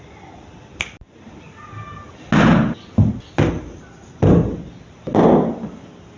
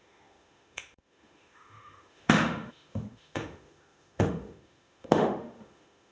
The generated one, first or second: second